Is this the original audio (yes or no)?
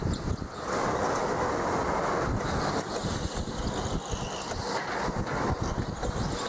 yes